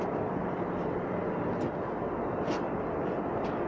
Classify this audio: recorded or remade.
recorded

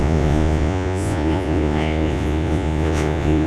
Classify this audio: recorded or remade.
remade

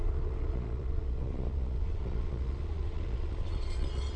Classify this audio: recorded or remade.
remade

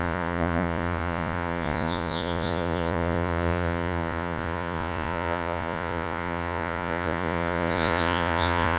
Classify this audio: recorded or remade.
remade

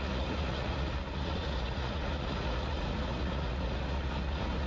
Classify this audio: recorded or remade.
remade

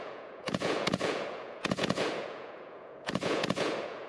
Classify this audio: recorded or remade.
remade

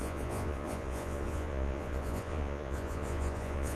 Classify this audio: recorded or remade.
remade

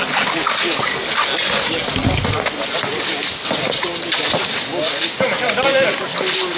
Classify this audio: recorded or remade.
recorded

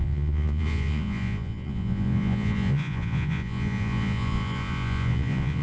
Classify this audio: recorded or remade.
remade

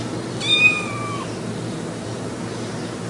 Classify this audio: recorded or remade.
recorded